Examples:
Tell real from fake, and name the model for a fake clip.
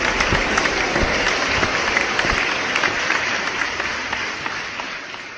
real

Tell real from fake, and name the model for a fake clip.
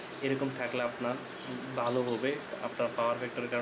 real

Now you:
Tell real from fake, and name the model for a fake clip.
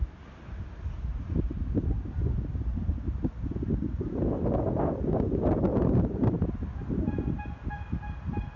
real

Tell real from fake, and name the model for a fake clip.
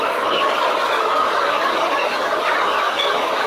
fake, codec, DAC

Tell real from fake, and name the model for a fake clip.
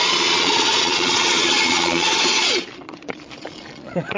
fake, vocoder, Vocos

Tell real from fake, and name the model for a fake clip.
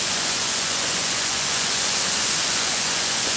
fake, vocoder, Vocos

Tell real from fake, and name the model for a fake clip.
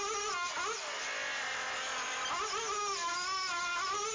real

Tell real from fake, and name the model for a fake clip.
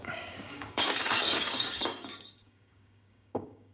fake, codec, DAC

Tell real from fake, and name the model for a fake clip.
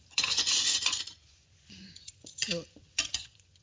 fake, vocoder, Vocos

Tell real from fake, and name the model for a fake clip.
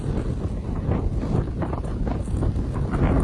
real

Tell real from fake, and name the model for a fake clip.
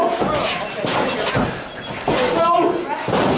real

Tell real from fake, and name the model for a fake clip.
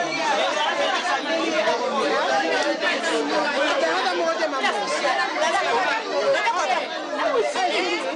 real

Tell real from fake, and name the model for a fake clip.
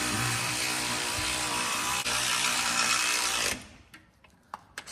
fake, vocoder, BigVGAN v2